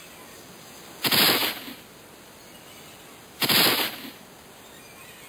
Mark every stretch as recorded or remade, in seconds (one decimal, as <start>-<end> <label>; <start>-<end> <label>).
0.0-5.3 recorded